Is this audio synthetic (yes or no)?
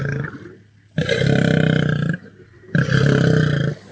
no